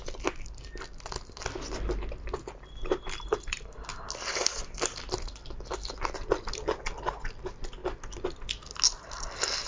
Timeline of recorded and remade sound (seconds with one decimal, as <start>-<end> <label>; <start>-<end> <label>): 0.0-9.7 recorded